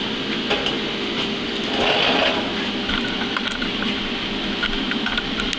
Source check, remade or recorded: recorded